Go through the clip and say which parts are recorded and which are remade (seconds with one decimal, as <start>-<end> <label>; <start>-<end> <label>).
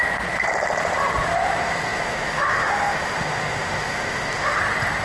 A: 0.0-1.6 recorded; 1.6-4.6 remade; 4.6-5.0 recorded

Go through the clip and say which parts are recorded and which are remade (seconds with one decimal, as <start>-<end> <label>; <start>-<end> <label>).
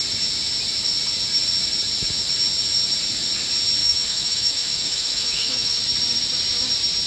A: 0.0-3.8 recorded; 3.8-5.8 remade; 5.8-7.1 recorded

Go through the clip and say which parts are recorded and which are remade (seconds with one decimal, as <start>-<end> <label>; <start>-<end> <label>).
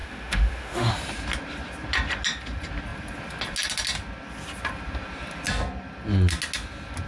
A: 0.0-0.9 remade; 0.9-7.1 recorded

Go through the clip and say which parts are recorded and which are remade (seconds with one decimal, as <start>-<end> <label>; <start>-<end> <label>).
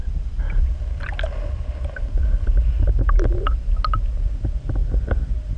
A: 0.0-5.6 recorded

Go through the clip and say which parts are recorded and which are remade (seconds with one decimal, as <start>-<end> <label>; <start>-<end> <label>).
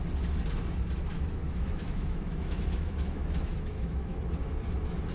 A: 0.0-1.1 recorded; 1.1-4.2 remade; 4.2-5.1 recorded